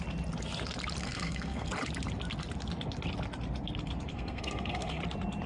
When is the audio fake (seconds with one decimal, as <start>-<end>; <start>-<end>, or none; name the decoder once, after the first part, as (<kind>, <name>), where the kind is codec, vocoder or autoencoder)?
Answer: 1.0-1.7 (codec, SNAC); 4.1-5.0

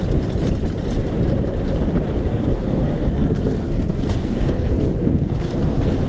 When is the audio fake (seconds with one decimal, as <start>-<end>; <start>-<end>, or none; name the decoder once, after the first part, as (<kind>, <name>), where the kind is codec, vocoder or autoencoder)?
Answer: 2.2-6.1 (codec, SNAC)